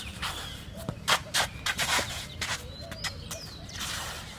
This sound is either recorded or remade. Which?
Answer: remade